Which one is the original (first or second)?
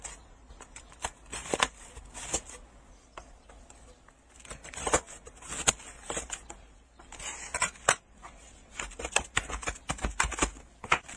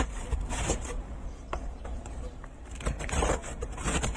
first